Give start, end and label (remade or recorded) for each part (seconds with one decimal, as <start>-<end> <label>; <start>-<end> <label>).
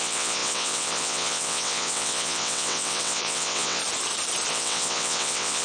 0.0-3.8 remade; 3.8-4.5 recorded; 4.5-5.6 remade